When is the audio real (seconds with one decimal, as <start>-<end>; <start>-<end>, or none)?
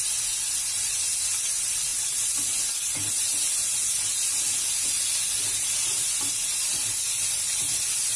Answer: 0.0-8.2